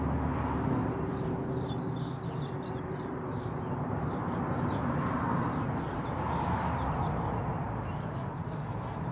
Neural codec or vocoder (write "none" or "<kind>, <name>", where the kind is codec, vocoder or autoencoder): none